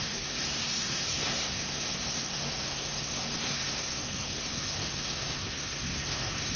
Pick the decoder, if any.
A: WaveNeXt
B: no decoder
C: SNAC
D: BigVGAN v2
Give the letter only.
C